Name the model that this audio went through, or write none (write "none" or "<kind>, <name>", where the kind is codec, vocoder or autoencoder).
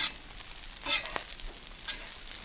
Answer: none